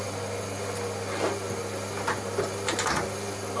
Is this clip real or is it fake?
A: real